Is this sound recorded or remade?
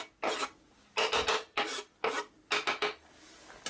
recorded